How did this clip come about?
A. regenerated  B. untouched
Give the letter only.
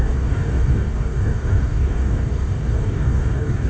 A